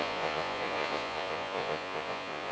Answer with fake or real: fake